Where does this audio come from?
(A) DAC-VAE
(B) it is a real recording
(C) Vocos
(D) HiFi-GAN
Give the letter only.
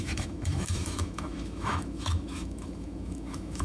A